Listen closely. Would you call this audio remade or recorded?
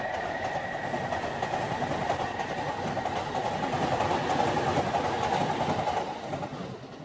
recorded